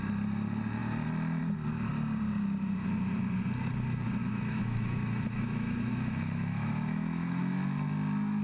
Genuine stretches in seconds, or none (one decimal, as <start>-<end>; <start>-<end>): 0.0-4.2; 7.4-8.4